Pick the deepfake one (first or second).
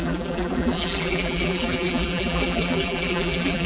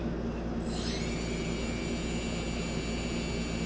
first